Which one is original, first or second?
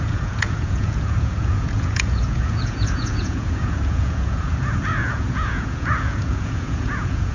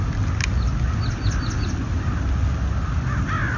second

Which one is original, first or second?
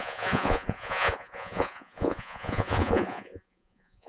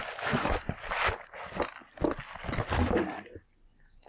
second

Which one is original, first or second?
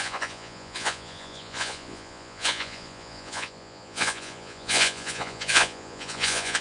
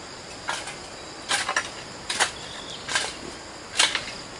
second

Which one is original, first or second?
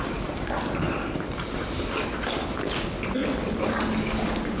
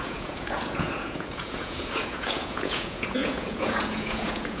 first